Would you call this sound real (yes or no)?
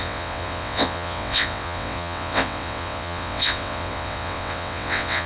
no